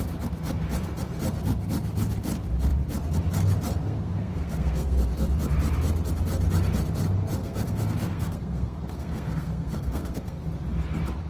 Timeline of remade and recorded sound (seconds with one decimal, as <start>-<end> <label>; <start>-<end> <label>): 0.0-3.8 recorded; 3.8-5.0 remade; 5.0-7.4 recorded; 7.4-10.4 remade; 10.4-11.3 recorded